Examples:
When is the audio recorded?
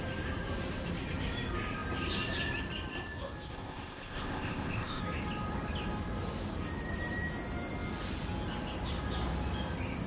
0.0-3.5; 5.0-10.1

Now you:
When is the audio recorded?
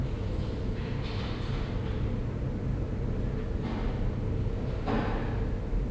0.0-5.9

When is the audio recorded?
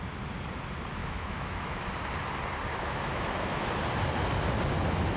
0.0-1.0; 1.9-2.7; 3.7-5.2